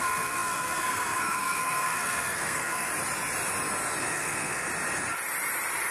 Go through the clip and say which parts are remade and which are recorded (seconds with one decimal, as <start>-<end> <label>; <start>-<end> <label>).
0.0-2.9 remade; 2.9-4.0 recorded; 4.0-4.7 remade; 4.7-5.9 recorded